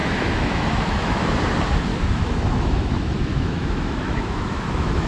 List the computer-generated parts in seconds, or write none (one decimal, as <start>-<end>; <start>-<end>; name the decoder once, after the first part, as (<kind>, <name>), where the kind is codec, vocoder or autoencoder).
0.0-1.3 (autoencoder, DAC-VAE); 1.9-5.1